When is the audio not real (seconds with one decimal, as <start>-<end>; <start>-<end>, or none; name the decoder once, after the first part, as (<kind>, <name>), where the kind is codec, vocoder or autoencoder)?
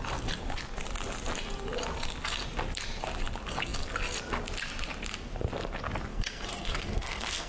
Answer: 6.1-7.5 (codec, SNAC)